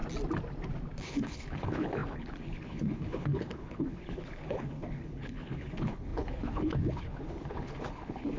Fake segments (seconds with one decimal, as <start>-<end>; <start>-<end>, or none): 1.0-8.4